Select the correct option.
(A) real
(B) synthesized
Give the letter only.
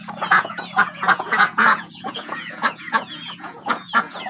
B